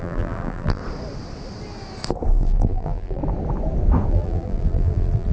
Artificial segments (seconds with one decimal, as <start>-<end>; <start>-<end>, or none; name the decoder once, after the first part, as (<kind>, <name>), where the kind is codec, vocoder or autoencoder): 0.0-0.8 (vocoder, BigVGAN v2); 2.3-3.2; 4.1-5.3